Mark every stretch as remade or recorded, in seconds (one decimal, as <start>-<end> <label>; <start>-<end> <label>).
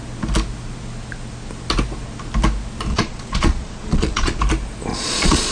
0.0-2.9 recorded; 2.9-4.4 remade; 4.4-4.9 recorded; 4.9-5.5 remade